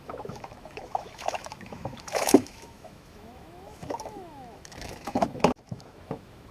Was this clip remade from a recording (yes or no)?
yes